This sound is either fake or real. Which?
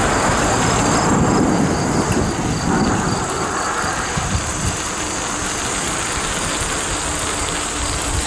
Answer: real